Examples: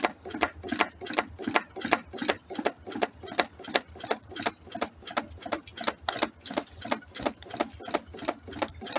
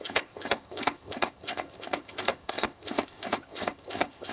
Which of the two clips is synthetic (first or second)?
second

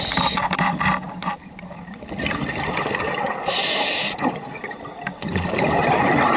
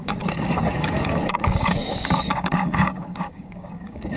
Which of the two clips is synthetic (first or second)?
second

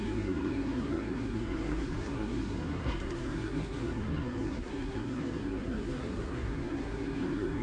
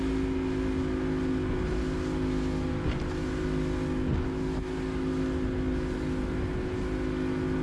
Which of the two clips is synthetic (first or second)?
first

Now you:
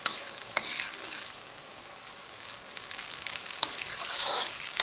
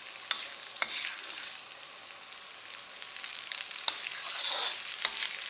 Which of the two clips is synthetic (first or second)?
first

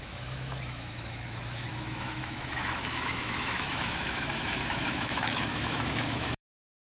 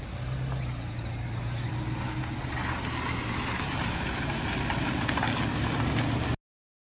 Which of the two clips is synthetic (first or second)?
first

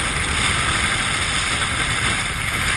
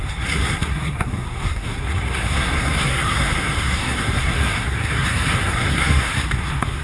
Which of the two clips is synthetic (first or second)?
second